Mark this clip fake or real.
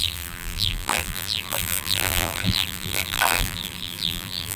fake